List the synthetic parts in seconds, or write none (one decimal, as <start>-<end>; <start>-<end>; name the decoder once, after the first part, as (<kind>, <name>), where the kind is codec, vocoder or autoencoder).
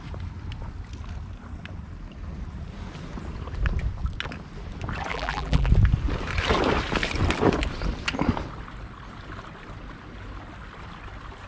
5.1-5.7 (vocoder, BigVGAN v2)